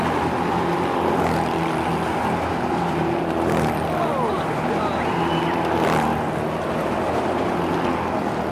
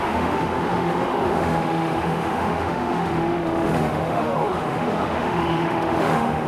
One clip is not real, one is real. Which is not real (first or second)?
second